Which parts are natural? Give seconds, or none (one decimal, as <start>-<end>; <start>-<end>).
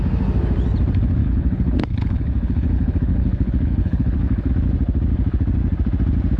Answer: 0.0-1.2; 4.5-6.4